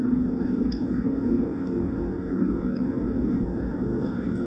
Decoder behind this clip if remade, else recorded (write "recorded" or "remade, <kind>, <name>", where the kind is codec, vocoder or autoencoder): remade, codec, DAC